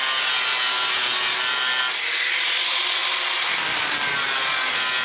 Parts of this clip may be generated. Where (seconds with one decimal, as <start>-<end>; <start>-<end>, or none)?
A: none